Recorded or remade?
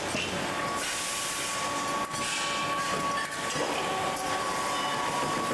recorded